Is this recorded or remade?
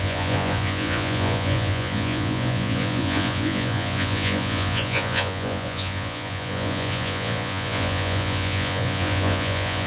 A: remade